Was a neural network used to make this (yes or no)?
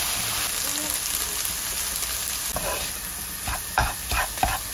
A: no